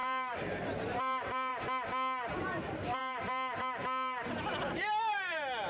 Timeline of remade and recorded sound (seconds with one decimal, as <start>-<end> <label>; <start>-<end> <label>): 0.0-1.5 remade; 1.5-2.4 recorded; 2.4-5.7 remade